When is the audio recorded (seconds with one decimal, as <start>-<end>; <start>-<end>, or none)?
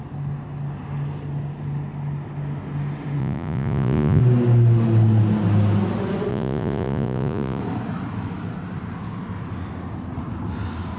0.0-3.2; 4.2-6.3; 7.6-11.0